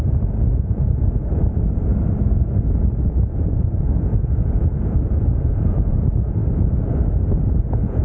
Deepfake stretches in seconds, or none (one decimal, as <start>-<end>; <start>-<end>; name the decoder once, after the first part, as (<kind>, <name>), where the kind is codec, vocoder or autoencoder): 0.0-1.9 (vocoder, Vocos); 3.3-6.4; 7.4-8.0